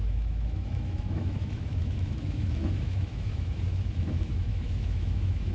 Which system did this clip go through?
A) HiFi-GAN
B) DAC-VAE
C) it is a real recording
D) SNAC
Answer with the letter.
B